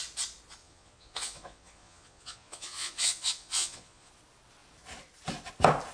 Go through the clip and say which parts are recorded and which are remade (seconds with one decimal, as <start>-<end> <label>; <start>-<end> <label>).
0.0-0.6 recorded; 0.6-4.1 remade; 4.1-5.9 recorded